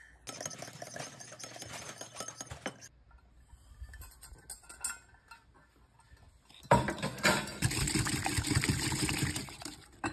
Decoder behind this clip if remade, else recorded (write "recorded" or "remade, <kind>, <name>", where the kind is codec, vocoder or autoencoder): recorded